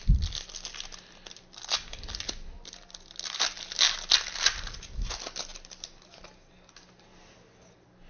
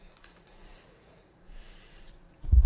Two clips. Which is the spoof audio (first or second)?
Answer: second